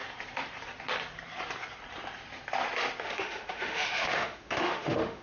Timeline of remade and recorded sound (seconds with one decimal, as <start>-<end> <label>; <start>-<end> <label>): 0.0-3.0 recorded; 3.0-5.2 remade